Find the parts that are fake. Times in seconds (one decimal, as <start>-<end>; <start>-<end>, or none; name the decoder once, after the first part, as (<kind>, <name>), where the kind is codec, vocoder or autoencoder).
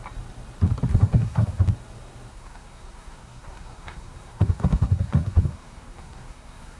0.9-1.6 (codec, SNAC); 2.3-6.8